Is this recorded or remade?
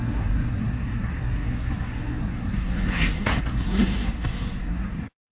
remade